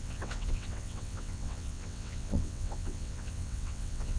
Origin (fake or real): fake